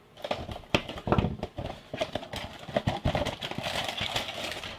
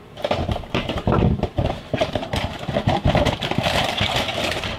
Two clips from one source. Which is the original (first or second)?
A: first